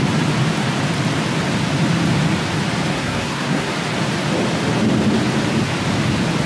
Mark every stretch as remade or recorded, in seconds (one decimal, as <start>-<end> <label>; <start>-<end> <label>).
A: 0.0-2.9 recorded; 2.9-3.7 remade; 3.7-6.5 recorded